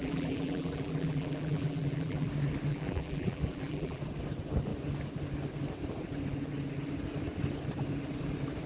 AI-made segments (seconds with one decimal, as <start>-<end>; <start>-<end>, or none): 0.0-2.3; 2.7-4.0